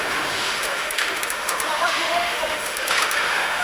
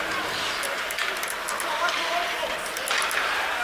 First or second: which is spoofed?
first